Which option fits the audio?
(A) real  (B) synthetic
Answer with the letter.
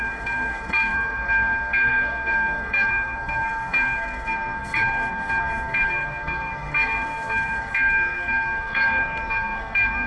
B